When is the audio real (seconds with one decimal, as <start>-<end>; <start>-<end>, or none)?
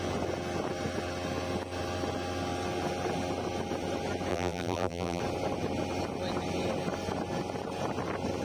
0.0-4.3; 5.2-8.4